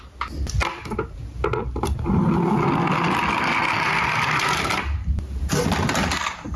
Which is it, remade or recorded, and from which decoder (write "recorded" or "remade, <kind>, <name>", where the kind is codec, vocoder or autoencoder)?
recorded